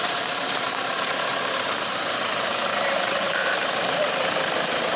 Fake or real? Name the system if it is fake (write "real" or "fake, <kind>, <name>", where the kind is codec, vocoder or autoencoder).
fake, vocoder, BigVGAN v2